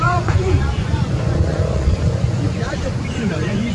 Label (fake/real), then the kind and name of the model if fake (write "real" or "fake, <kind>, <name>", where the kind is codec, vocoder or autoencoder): fake, vocoder, Vocos